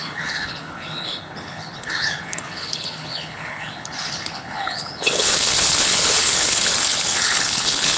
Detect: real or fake fake